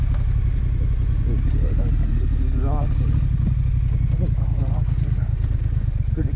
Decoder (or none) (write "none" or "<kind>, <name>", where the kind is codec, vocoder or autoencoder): none